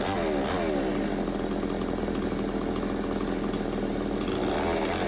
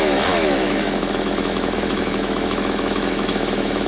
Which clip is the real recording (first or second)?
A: first